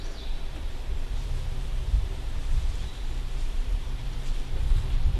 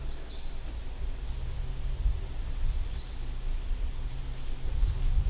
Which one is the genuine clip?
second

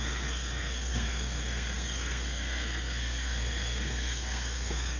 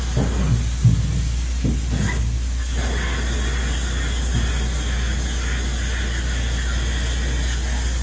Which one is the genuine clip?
second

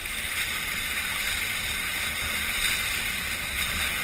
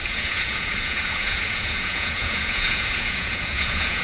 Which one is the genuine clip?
first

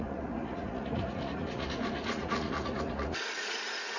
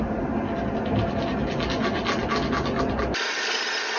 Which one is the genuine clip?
second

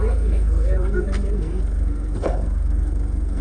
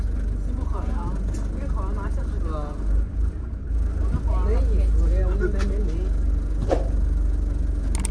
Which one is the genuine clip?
second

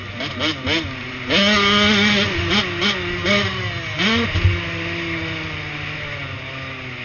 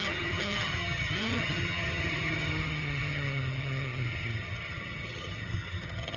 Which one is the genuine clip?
first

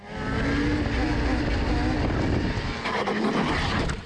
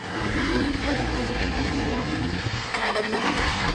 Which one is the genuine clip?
first